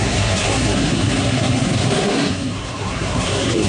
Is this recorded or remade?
remade